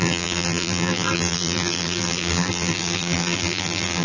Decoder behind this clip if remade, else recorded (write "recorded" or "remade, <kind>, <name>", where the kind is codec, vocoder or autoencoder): remade, vocoder, BigVGAN v2